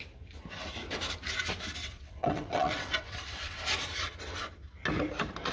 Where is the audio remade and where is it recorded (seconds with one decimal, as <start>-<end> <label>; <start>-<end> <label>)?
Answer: 0.0-1.8 recorded; 1.8-3.6 remade; 3.6-5.5 recorded